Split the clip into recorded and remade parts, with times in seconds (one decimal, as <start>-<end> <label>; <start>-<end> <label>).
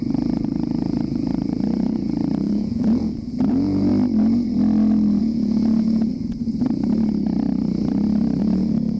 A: 0.0-3.9 remade; 3.9-5.2 recorded; 5.2-6.1 remade; 6.1-8.4 recorded; 8.4-9.0 remade